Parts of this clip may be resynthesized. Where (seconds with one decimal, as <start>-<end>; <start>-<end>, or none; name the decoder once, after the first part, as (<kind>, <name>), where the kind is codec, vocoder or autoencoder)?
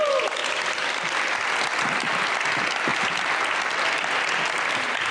0.4-1.5 (vocoder, BigVGAN v2)